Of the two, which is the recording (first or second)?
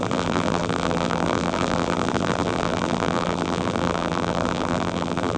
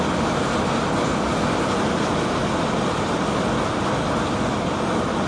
second